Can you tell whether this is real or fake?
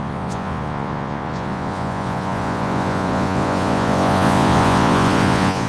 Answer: fake